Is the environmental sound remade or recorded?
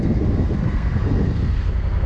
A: remade